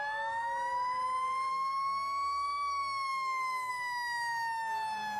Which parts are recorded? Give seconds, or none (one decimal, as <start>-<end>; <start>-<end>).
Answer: 0.0-1.5; 3.7-5.2